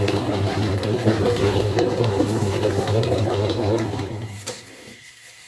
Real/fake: fake